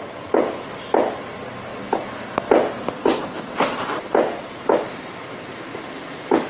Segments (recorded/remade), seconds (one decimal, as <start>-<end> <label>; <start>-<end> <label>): 0.0-6.5 recorded